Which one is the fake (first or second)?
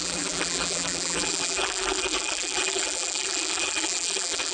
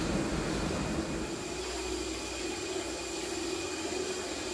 first